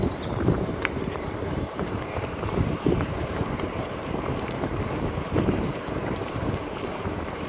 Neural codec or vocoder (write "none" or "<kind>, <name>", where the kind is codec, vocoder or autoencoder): vocoder, BigVGAN v2